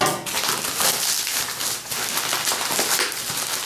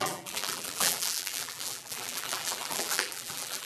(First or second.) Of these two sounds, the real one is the first